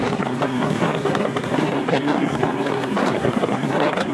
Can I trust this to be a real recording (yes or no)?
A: no